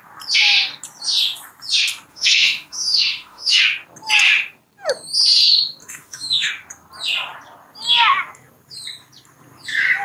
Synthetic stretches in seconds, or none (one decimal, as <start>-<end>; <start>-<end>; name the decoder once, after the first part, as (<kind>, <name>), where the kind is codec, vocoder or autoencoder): 2.1-3.6 (autoencoder, DAC-VAE); 5.8-6.5